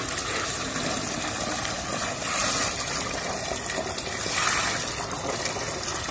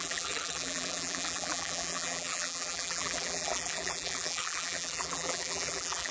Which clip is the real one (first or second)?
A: first